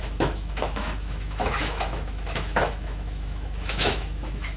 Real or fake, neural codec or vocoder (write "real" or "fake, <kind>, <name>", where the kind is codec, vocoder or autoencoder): fake, autoencoder, DAC-VAE